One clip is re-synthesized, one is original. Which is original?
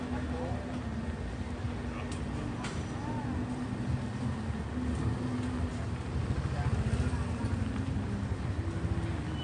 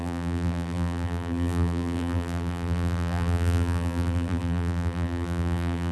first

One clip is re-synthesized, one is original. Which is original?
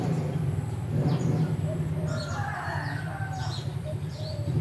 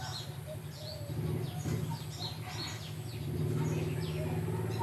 second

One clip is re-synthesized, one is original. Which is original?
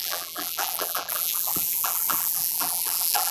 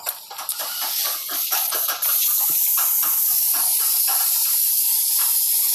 second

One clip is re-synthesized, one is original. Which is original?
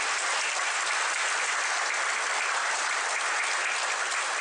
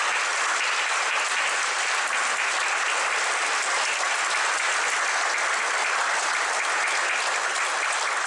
second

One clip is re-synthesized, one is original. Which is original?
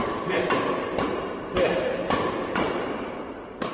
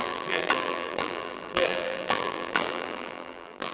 first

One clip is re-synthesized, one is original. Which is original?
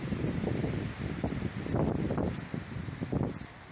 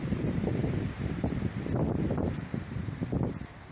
first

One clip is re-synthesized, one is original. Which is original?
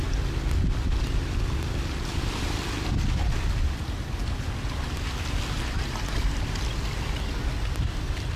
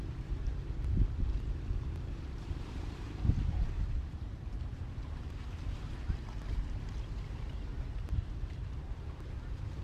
first